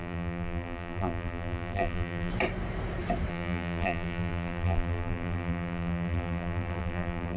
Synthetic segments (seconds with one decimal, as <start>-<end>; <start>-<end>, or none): 0.0-2.3; 3.3-7.4